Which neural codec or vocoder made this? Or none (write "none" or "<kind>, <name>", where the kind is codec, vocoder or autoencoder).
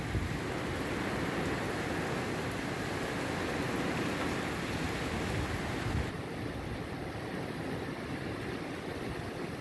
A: none